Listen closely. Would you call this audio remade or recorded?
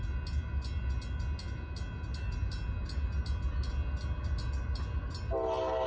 recorded